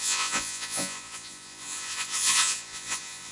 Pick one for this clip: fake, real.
fake